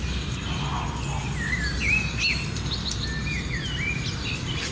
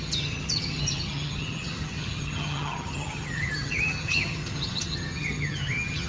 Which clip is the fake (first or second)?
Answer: second